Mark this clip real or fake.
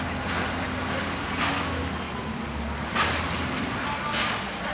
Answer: real